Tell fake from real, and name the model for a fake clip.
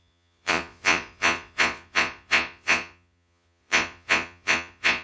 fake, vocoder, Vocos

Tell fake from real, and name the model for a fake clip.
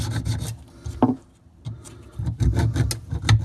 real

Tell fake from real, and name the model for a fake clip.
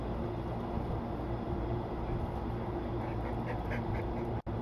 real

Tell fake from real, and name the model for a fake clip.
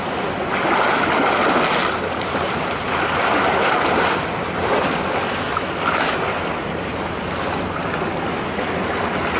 real